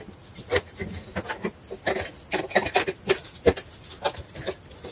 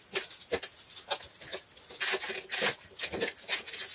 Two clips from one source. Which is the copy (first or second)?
first